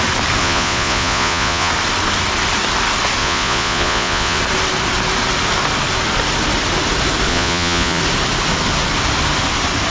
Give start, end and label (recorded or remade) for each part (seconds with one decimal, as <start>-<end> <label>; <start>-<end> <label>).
0.0-0.4 recorded; 0.4-1.7 remade; 1.7-3.2 recorded; 3.2-4.4 remade; 4.4-7.3 recorded; 7.3-8.0 remade; 8.0-9.9 recorded